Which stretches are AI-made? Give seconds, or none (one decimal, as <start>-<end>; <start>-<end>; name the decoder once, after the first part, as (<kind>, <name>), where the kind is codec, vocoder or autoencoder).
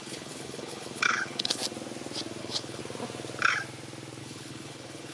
0.0-1.6 (codec, HILCodec); 2.4-2.8; 4.2-5.1